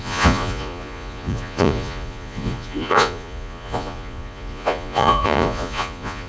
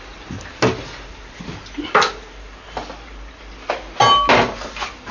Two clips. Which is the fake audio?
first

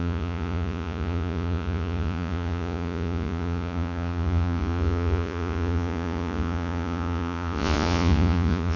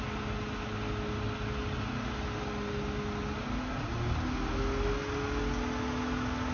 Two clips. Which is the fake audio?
first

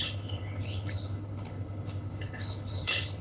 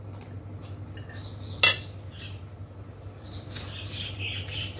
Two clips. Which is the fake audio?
first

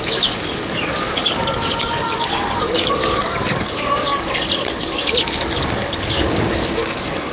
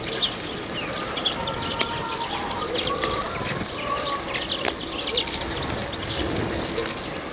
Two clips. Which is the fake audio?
first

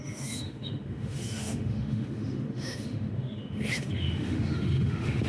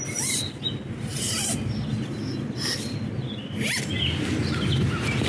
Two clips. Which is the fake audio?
first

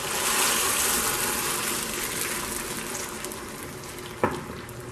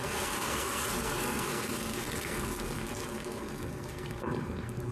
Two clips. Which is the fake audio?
second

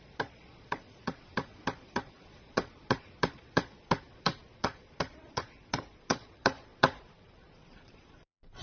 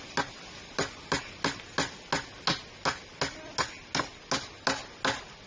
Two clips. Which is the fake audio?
first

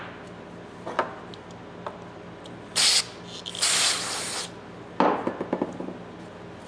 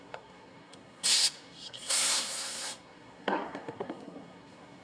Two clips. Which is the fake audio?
second